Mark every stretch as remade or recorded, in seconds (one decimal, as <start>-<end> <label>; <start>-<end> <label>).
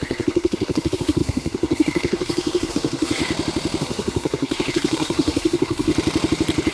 0.0-3.2 remade; 3.2-3.8 recorded; 3.8-5.9 remade; 5.9-6.7 recorded